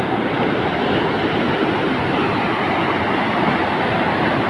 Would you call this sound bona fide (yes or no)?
yes